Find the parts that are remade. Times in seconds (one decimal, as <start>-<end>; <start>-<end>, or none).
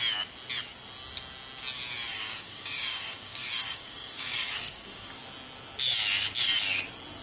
2.1-5.2